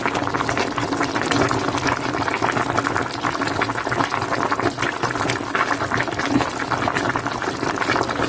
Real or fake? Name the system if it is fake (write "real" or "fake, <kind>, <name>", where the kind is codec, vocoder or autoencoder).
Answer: real